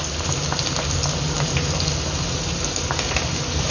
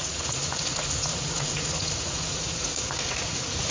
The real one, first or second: first